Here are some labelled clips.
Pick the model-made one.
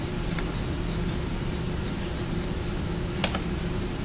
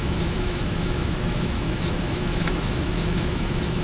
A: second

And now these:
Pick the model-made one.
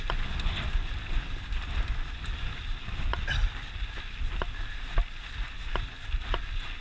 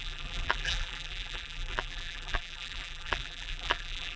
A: second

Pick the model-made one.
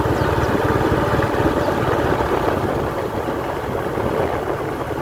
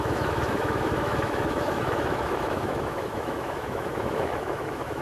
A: second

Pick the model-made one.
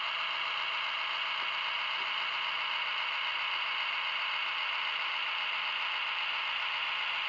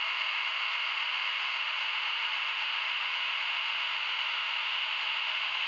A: second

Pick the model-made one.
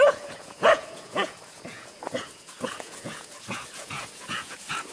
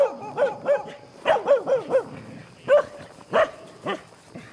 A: first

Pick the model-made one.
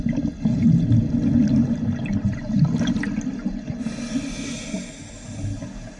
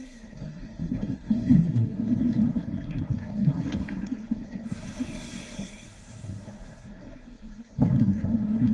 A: second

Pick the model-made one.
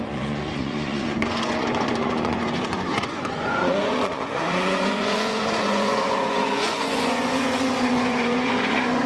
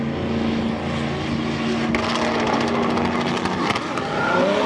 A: first